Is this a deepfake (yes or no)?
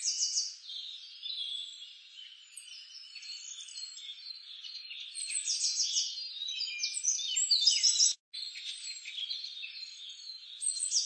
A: no